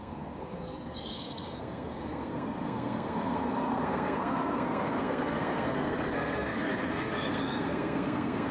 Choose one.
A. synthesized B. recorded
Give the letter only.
A